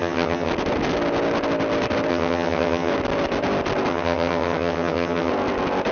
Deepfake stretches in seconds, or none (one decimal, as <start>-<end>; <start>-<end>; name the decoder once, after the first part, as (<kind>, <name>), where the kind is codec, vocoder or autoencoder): 0.0-0.5 (vocoder, HiFi-GAN); 2.1-2.9; 3.9-5.3